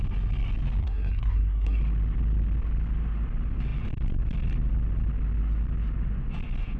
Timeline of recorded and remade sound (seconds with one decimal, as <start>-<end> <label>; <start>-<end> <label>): 0.0-0.8 recorded; 0.8-1.8 remade; 1.8-6.8 recorded